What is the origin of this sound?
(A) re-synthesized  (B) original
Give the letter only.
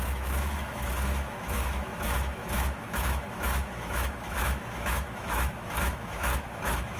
A